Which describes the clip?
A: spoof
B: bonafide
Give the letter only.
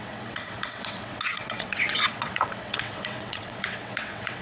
A